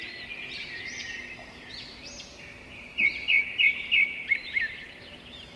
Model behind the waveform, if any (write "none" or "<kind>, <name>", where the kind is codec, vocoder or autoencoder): vocoder, BigVGAN v2